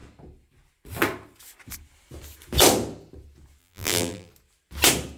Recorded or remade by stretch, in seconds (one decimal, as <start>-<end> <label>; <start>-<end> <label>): 0.0-3.6 recorded; 3.6-4.3 remade; 4.3-5.2 recorded